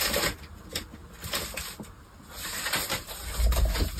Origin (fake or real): real